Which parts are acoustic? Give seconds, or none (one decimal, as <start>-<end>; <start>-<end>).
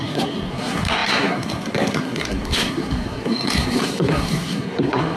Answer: none